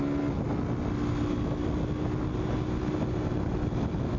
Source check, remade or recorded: recorded